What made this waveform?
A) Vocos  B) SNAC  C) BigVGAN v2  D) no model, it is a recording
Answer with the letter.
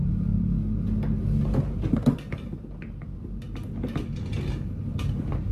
D